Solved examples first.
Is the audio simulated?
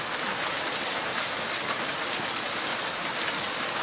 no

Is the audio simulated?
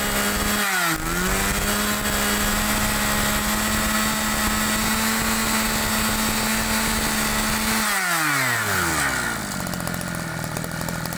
no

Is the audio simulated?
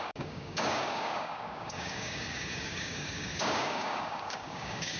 yes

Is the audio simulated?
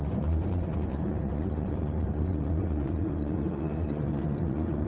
yes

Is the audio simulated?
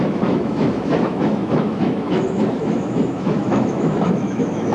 yes